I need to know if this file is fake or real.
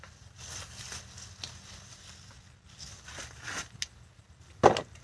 real